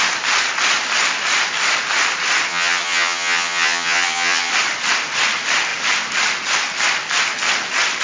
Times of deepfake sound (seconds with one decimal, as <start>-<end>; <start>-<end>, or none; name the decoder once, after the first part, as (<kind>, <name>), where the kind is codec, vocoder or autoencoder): 2.5-4.5 (vocoder, HiFi-GAN)